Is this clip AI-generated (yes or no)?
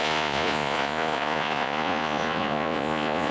yes